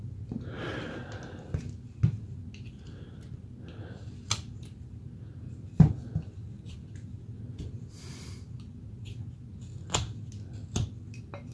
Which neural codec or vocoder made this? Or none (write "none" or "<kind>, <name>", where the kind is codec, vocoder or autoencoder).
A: none